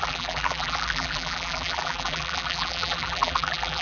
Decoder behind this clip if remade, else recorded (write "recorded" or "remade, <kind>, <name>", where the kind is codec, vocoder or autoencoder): remade, vocoder, BigVGAN v2